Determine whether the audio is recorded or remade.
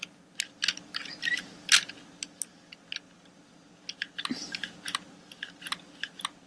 recorded